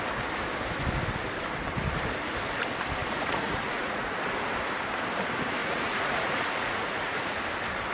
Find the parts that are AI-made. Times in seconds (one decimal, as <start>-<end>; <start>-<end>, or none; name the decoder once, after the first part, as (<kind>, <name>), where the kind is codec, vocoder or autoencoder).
3.0-4.1 (vocoder, Vocos); 5.6-7.4

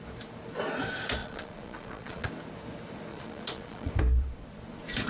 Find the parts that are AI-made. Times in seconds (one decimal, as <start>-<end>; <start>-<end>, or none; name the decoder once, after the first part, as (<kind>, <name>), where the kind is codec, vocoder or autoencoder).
1.2-2.3 (vocoder, Vocos); 3.1-3.9

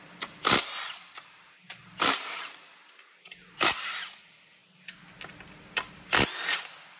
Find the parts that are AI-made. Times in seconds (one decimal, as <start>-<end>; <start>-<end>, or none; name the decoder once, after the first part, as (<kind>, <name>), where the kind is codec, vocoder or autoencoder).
none

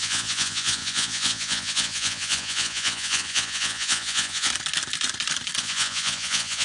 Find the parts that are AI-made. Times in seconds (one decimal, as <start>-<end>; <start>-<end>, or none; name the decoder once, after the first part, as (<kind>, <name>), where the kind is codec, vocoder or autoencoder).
0.0-4.5 (vocoder, Vocos); 5.6-6.6

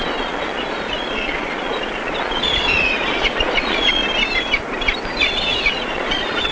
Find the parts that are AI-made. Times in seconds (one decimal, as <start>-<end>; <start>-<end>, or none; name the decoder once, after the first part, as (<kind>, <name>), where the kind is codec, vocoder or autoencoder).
0.0-4.0 (vocoder, Vocos); 5.2-6.5

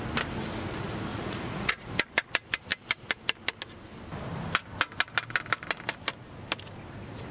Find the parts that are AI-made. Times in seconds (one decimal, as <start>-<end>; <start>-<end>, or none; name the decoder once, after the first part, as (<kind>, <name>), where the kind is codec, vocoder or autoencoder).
1.1-1.9 (vocoder, Vocos)

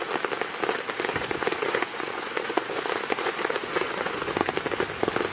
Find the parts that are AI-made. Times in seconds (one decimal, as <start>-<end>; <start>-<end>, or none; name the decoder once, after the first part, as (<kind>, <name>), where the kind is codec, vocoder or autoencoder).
1.1-4.3 (vocoder, Vocos)